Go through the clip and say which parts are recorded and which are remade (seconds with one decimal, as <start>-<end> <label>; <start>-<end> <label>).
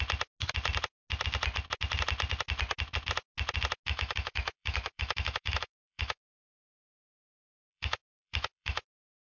0.0-3.9 recorded; 3.9-9.3 remade